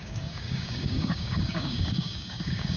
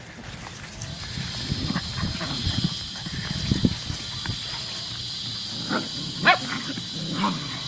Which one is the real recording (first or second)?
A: second